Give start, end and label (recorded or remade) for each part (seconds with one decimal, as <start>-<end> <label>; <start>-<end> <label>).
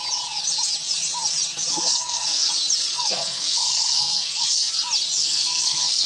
0.0-1.7 recorded; 1.7-2.5 remade; 2.5-2.9 recorded; 2.9-4.7 remade; 4.7-5.2 recorded; 5.2-6.1 remade